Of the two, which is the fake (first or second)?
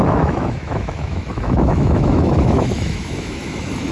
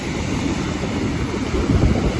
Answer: first